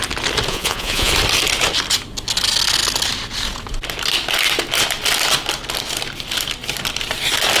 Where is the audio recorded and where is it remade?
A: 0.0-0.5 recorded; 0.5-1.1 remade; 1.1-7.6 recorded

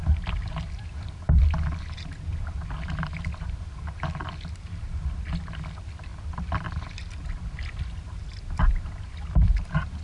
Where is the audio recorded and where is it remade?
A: 0.0-10.0 recorded

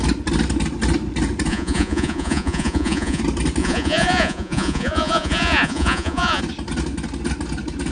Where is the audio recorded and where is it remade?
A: 0.0-1.5 recorded; 1.5-3.2 remade; 3.2-3.6 recorded; 3.6-6.4 remade; 6.4-7.9 recorded

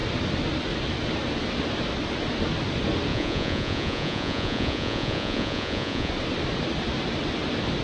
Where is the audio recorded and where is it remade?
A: 0.0-3.1 recorded; 3.1-6.1 remade; 6.1-7.8 recorded